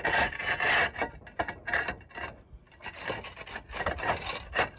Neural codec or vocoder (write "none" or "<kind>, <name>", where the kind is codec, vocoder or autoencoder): none